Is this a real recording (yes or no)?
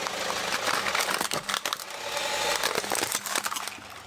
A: yes